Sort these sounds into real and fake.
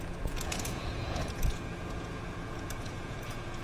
fake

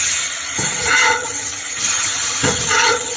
fake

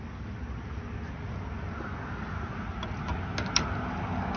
real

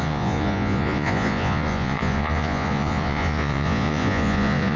fake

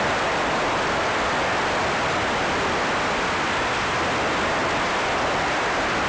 real